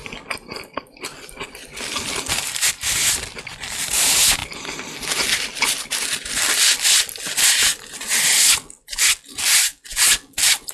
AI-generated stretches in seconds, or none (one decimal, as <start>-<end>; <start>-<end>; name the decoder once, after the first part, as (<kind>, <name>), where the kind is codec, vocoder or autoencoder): none